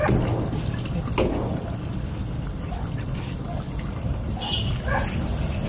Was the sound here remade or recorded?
recorded